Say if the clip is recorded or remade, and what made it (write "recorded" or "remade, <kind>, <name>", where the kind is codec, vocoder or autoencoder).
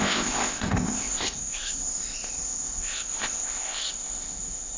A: remade, codec, ZipCodec